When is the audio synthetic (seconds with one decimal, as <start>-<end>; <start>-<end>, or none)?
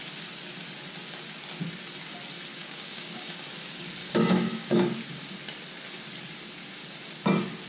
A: 2.5-3.4; 4.0-4.8